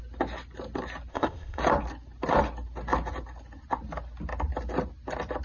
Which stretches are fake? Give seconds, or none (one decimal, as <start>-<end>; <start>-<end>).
1.1-1.6

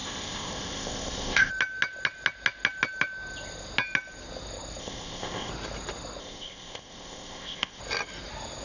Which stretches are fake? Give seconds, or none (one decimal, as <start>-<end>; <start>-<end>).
0.0-1.5; 4.8-5.5; 6.2-7.8

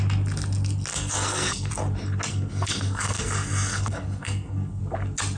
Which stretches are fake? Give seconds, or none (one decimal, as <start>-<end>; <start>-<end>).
0.9-1.7; 2.3-4.8

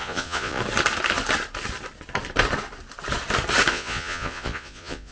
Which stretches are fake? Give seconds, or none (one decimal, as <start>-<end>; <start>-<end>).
0.0-0.6; 3.7-5.1

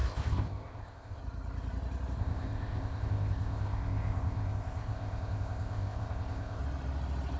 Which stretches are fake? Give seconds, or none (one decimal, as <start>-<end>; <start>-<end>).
0.0-1.2; 2.2-6.6

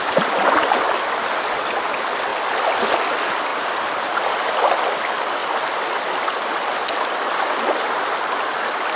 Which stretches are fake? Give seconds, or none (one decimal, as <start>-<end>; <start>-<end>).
3.5-4.1